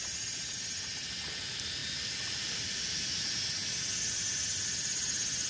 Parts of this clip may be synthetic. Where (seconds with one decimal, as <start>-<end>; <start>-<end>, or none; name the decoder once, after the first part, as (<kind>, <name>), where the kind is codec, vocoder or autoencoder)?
none